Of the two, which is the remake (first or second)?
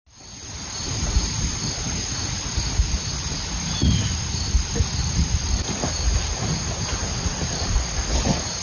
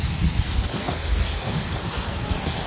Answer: second